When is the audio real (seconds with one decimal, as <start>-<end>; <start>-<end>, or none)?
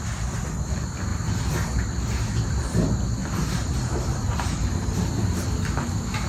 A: 0.0-1.1; 2.8-3.2; 5.6-6.3